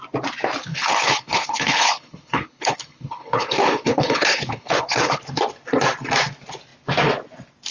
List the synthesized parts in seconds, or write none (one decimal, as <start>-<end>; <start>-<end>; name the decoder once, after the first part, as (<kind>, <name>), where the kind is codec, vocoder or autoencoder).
0.6-5.2 (codec, HILCodec)

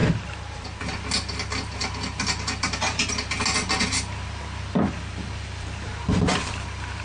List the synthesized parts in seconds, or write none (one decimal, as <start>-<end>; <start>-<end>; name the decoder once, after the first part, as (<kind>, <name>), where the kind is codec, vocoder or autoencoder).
0.0-0.8 (vocoder, BigVGAN v2); 1.8-3.1

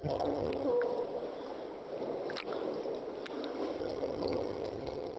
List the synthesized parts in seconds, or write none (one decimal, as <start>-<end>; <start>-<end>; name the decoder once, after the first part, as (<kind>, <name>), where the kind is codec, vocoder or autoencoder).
0.0-0.7 (vocoder, HiFi-GAN); 3.8-5.2